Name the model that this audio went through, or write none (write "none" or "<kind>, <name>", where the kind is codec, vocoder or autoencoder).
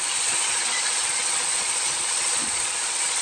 vocoder, Vocos